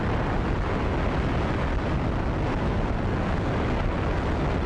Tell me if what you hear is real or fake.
real